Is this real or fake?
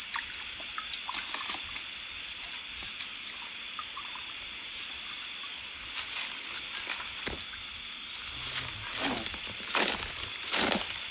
real